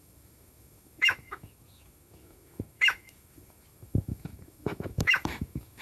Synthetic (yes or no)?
yes